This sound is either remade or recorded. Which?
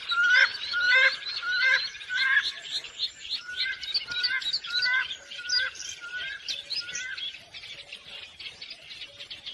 recorded